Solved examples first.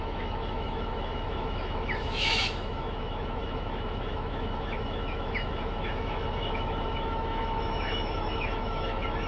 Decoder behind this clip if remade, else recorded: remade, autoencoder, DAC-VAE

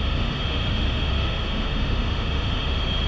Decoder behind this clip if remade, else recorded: remade, autoencoder, DAC-VAE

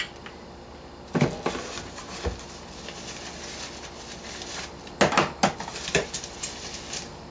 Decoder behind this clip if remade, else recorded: recorded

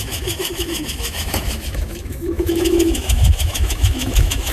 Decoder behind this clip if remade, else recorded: remade, autoencoder, DAC-VAE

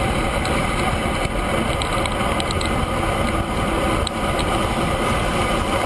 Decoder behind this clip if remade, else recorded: recorded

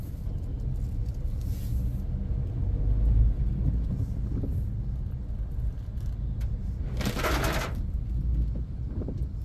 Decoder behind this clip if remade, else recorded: recorded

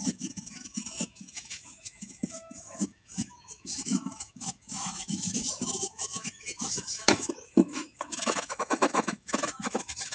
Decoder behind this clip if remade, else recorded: remade, autoencoder, DAC-VAE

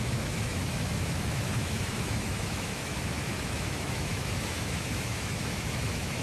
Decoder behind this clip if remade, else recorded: remade, autoencoder, DAC-VAE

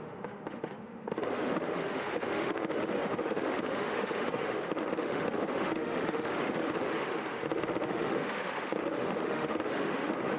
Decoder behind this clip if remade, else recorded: remade, autoencoder, DAC-VAE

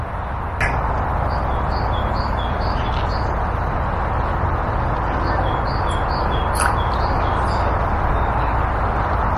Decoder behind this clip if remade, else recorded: recorded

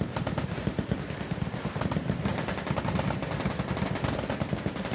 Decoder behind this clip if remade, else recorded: recorded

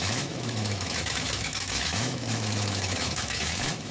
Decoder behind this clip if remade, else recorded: remade, autoencoder, DAC-VAE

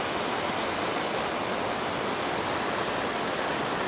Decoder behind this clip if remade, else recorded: recorded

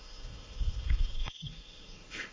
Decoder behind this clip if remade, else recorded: remade, autoencoder, DAC-VAE